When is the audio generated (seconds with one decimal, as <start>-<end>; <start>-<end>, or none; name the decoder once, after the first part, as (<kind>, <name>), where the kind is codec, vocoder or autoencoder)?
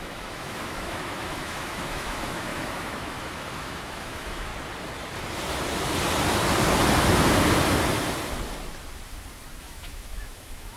0.0-4.5 (autoencoder, DAC-VAE); 9.6-10.8